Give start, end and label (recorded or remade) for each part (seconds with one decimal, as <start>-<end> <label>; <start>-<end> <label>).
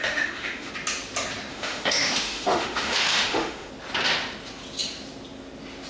0.0-0.7 remade; 0.7-1.5 recorded; 1.5-3.7 remade; 3.7-5.9 recorded